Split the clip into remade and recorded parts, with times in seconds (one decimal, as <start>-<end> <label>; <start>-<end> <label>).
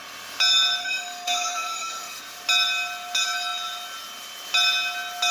0.0-0.8 recorded; 0.8-2.2 remade; 2.2-5.3 recorded